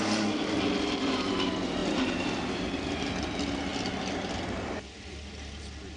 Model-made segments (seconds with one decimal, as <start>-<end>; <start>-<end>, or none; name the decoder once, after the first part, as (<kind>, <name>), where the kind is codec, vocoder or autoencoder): none